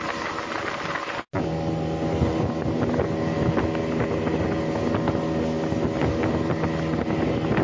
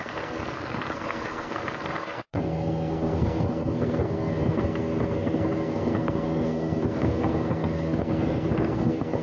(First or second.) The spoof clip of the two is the second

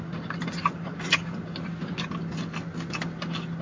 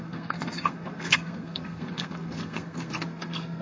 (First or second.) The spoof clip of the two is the second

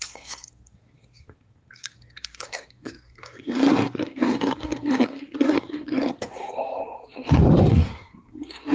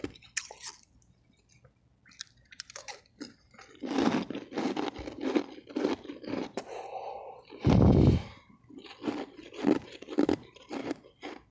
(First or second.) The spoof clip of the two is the first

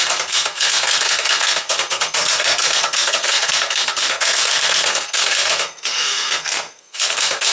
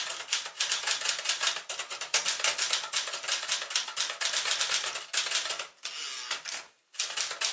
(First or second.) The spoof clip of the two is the first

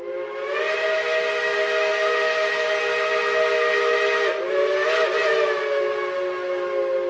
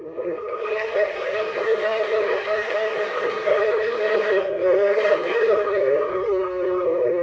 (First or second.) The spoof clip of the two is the second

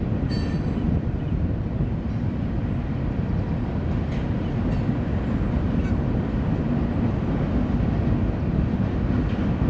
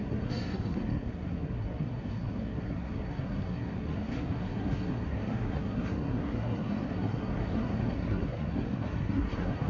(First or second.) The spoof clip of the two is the second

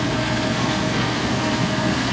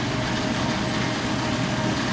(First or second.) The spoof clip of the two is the first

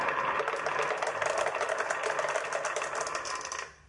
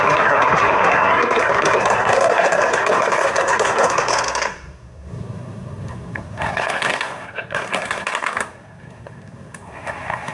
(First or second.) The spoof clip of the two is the second